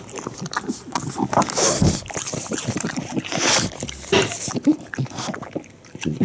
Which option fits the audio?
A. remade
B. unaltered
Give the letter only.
B